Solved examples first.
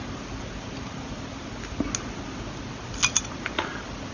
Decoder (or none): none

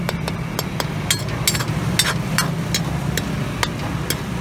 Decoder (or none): none